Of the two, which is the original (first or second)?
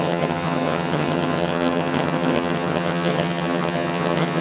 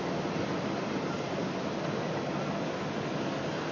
second